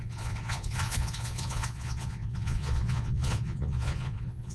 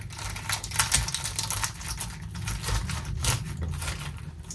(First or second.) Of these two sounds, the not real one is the first